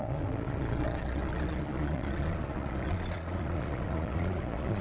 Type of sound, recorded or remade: remade